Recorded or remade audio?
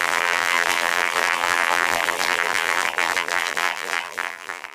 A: remade